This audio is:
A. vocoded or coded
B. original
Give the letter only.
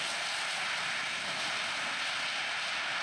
B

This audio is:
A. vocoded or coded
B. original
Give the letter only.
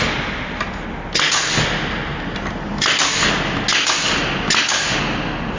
B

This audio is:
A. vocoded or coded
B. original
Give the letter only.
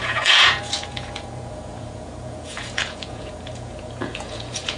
A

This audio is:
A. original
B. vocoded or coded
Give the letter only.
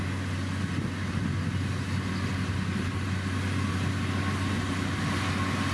A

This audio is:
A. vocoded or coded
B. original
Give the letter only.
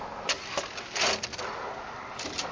B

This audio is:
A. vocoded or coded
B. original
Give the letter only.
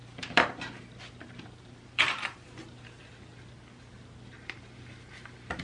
A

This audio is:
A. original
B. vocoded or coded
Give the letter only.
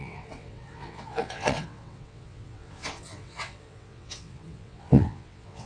B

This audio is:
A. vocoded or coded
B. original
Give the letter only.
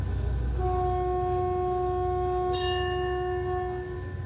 B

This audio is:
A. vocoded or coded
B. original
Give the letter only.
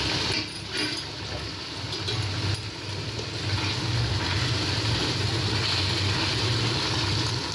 B